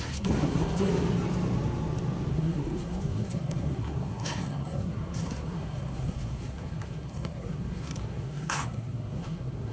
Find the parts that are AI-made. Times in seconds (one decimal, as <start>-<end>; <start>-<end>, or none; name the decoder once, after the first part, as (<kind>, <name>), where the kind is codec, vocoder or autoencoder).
0.0-0.9 (codec, SNAC); 2.3-9.7